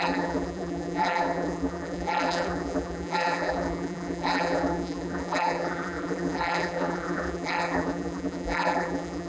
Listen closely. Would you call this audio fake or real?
fake